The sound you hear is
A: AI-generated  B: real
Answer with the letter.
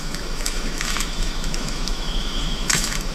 A